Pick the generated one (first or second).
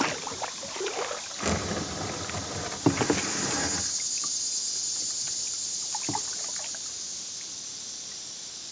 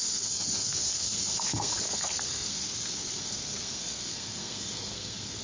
second